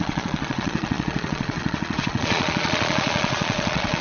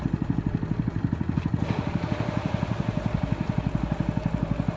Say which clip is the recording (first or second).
second